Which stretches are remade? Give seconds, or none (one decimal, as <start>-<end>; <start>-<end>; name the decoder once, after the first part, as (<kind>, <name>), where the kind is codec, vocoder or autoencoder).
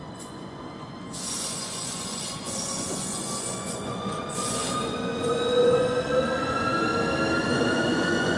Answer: 0.0-6.9 (vocoder, Vocos); 7.4-8.4